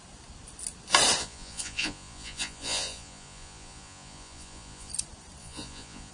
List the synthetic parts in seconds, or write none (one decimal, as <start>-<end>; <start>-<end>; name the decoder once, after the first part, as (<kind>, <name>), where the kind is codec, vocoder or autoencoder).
1.2-4.9 (vocoder, Vocos); 5.4-6.1